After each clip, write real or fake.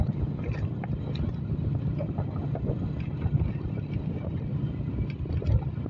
real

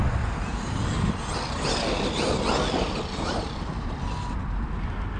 real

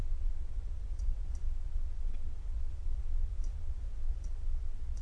fake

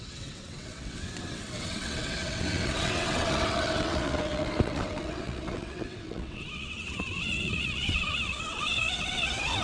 fake